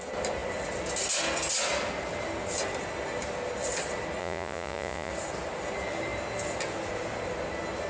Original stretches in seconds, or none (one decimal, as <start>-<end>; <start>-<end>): 0.0-4.2; 5.1-7.9